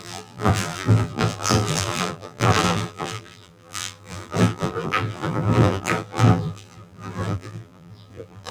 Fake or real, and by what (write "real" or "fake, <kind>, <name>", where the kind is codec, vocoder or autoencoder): fake, vocoder, BigVGAN v2